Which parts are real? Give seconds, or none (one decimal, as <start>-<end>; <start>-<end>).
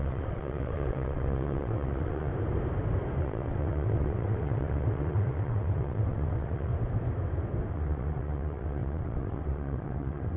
2.3-3.2; 6.7-7.7